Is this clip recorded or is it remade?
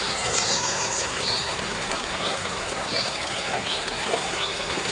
remade